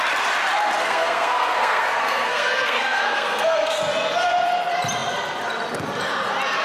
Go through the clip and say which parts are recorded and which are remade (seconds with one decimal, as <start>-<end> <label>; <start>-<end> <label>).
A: 0.0-0.8 recorded; 0.8-3.8 remade; 3.8-6.6 recorded

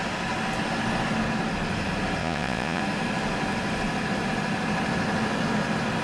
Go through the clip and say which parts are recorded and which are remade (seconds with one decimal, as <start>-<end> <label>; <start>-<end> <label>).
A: 0.0-2.2 recorded; 2.2-2.8 remade; 2.8-6.0 recorded

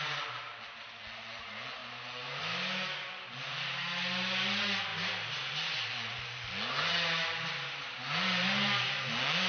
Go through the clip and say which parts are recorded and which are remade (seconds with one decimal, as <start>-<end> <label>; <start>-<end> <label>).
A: 0.0-9.5 recorded

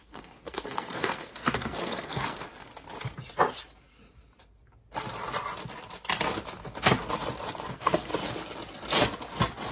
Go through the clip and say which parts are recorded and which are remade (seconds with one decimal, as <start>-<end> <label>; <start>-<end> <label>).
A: 0.0-2.7 remade; 2.7-7.7 recorded; 7.7-8.1 remade; 8.1-9.7 recorded

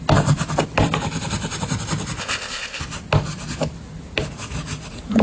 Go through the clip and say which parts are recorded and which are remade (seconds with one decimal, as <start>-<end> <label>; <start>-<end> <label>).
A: 0.0-2.2 recorded; 2.2-2.8 remade; 2.8-5.2 recorded

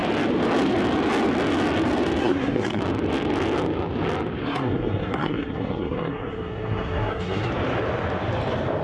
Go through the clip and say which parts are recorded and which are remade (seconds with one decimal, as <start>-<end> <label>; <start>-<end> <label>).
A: 0.0-2.2 recorded; 2.2-2.8 remade; 2.8-4.4 recorded; 4.4-7.5 remade; 7.5-8.8 recorded